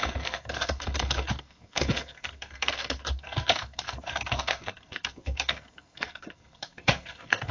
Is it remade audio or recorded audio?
remade